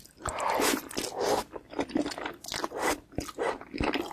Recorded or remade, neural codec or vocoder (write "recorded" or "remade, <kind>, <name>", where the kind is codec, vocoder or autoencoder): recorded